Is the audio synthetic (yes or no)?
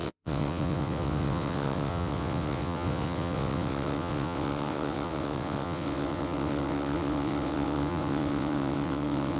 yes